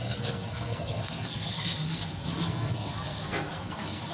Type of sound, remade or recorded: remade